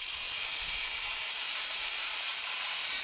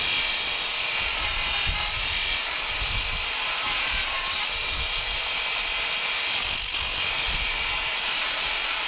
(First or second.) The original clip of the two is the second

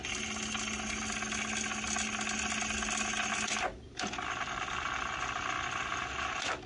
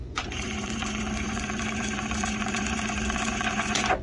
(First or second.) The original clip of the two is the first